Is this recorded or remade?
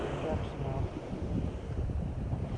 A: recorded